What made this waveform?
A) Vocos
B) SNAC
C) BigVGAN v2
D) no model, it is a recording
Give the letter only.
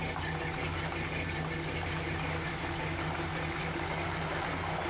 D